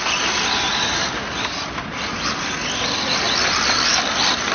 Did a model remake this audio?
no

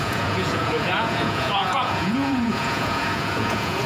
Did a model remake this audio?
yes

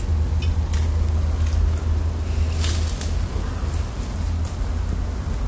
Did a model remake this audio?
no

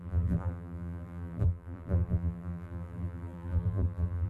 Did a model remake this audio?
yes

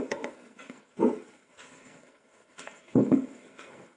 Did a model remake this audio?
yes